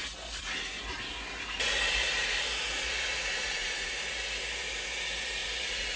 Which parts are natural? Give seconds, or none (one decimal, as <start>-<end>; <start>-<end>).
0.0-2.7; 3.9-5.4